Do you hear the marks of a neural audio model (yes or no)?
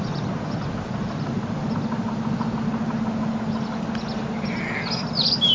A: no